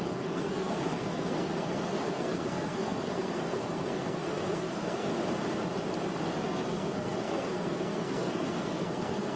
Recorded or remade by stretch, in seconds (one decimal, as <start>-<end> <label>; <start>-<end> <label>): 0.0-5.1 remade; 5.1-6.2 recorded; 6.2-9.4 remade